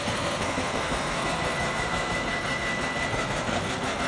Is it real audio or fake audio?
fake